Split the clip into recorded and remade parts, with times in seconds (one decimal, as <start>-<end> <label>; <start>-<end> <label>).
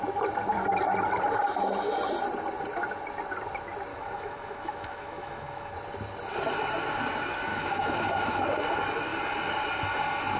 0.0-3.9 recorded; 3.9-5.7 remade; 5.7-7.5 recorded; 7.5-8.4 remade; 8.4-10.4 recorded